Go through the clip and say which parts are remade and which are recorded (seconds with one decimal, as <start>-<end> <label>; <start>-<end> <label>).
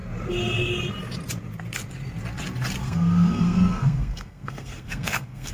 0.0-2.8 recorded; 2.8-5.5 remade